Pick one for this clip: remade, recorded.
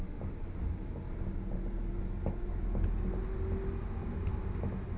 recorded